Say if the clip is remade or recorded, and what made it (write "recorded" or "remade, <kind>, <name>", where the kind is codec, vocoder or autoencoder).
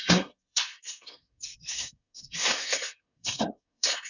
remade, codec, SNAC